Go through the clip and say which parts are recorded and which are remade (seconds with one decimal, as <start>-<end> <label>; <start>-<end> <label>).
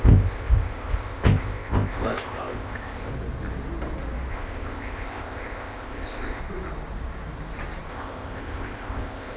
0.0-3.1 remade; 3.1-4.3 recorded; 4.3-6.4 remade; 6.4-7.9 recorded; 7.9-9.4 remade